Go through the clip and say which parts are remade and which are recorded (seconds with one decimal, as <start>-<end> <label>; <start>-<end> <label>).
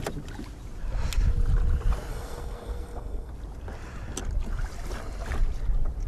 0.0-2.1 recorded; 2.1-3.3 remade; 3.3-6.1 recorded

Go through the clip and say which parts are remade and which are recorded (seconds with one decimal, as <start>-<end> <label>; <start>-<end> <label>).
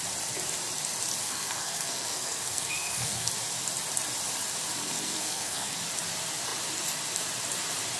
0.0-1.2 recorded; 1.2-3.3 remade; 3.3-4.8 recorded; 4.8-5.8 remade; 5.8-8.0 recorded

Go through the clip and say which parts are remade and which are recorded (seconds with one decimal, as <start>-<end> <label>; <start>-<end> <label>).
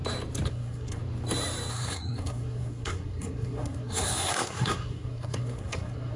0.0-0.5 recorded; 0.5-1.0 remade; 1.0-1.7 recorded; 1.7-6.2 remade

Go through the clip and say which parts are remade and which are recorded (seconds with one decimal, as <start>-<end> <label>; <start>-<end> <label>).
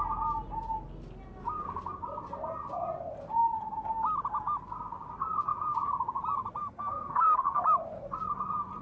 0.0-6.6 recorded; 6.6-7.6 remade; 7.6-8.8 recorded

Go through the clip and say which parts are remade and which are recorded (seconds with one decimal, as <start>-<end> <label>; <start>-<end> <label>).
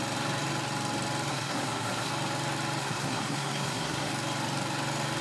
0.0-1.3 recorded; 1.3-2.1 remade; 2.1-2.8 recorded; 2.8-4.1 remade; 4.1-5.2 recorded